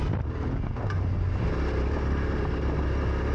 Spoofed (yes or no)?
no